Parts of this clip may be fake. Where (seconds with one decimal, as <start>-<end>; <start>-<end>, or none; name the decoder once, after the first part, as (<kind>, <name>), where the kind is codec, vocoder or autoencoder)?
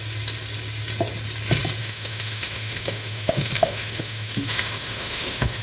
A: 1.8-5.6 (autoencoder, DAC-VAE)